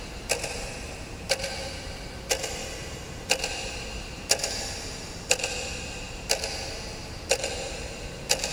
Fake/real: real